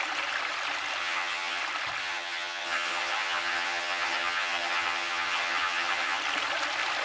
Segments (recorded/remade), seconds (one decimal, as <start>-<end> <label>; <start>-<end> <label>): 0.0-1.0 recorded; 1.0-1.6 remade; 1.6-2.0 recorded; 2.0-6.2 remade; 6.2-7.0 recorded